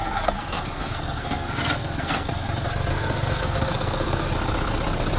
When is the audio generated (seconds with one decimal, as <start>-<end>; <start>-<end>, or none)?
0.0-2.3; 2.9-4.3